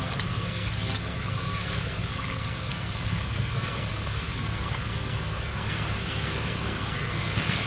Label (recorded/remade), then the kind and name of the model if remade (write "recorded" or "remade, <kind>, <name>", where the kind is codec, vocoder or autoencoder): remade, codec, SNAC